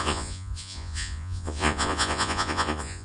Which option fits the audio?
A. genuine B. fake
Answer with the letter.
B